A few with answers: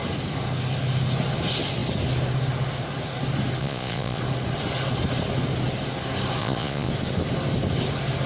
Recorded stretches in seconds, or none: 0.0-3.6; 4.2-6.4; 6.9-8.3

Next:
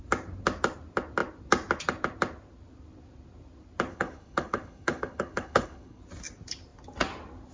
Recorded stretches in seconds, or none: 0.0-3.9; 6.0-7.5

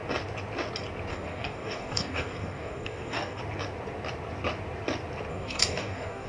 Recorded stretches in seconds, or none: 0.0-1.1; 3.4-5.3